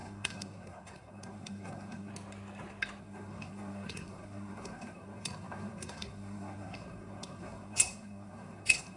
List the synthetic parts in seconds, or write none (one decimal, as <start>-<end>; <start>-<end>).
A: 0.0-2.1; 3.0-9.0